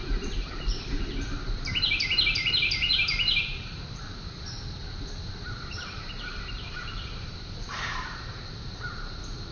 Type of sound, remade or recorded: remade